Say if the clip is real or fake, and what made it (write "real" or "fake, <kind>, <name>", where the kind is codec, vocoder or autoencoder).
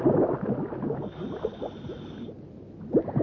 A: real